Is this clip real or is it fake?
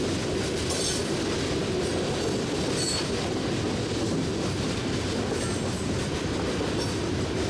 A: real